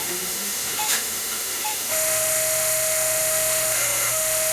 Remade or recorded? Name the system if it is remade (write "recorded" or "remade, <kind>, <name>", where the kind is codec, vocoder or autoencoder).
remade, autoencoder, DAC-VAE